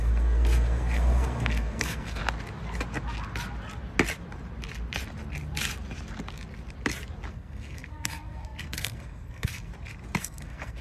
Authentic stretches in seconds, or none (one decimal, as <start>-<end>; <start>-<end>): 2.2-7.3; 9.7-10.2